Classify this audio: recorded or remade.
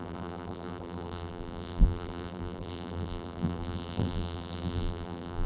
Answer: remade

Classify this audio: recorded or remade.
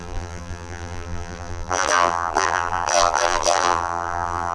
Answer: remade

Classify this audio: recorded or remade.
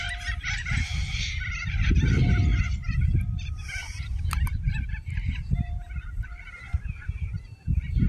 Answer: remade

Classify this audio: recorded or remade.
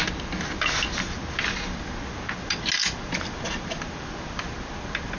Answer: recorded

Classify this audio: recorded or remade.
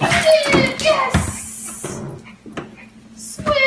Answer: recorded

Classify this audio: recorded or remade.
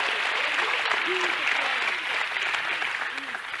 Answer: recorded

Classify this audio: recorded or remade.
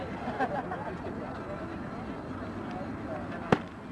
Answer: recorded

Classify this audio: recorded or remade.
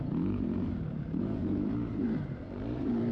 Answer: remade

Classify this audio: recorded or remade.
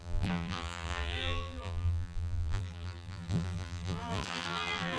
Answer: remade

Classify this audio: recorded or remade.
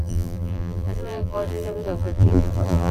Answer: remade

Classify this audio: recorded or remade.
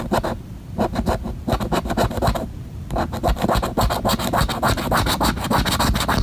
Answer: recorded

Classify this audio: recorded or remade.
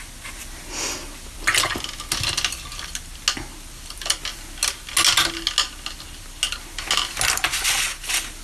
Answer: recorded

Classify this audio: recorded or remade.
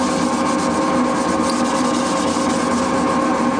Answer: recorded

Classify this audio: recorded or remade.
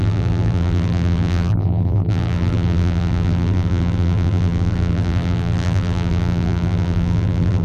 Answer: remade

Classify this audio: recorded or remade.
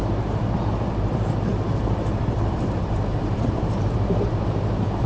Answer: remade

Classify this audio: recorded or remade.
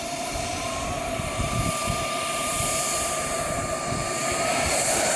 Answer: remade